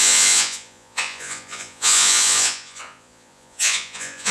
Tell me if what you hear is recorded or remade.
remade